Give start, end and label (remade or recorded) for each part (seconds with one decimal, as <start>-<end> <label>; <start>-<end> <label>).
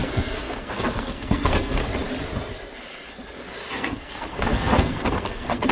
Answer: 0.0-1.8 remade; 1.8-3.7 recorded; 3.7-5.7 remade